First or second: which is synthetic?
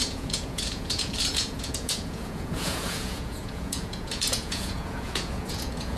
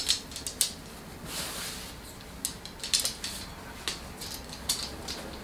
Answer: first